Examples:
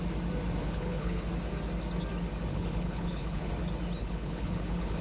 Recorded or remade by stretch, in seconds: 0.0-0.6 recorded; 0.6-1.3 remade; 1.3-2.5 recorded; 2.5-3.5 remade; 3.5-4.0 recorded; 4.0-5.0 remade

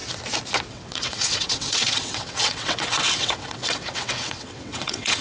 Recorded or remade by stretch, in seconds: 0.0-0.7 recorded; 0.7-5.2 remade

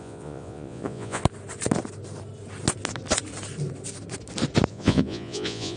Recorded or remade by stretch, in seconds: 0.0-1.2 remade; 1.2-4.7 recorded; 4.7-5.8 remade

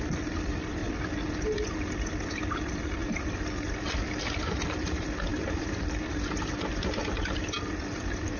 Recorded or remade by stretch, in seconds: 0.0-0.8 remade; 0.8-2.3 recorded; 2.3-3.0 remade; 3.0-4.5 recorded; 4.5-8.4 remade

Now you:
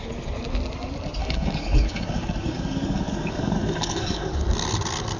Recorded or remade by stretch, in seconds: 0.0-1.2 recorded; 1.2-4.3 remade; 4.3-5.2 recorded